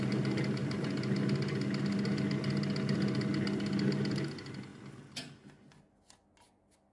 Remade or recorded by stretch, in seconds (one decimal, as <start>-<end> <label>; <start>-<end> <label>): 0.0-6.9 recorded